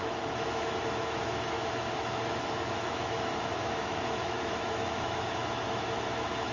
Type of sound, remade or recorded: remade